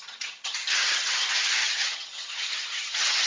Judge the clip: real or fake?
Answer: fake